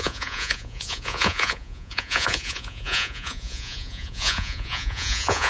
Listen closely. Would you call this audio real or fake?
fake